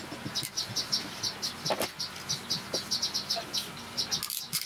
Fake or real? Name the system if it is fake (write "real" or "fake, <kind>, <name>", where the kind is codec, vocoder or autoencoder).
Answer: real